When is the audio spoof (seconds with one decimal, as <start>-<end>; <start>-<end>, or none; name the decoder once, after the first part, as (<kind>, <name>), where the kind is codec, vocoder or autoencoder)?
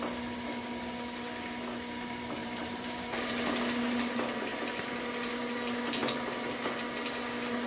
2.4-3.3 (vocoder, BigVGAN v2)